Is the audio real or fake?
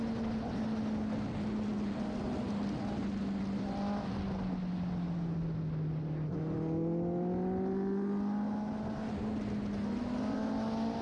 real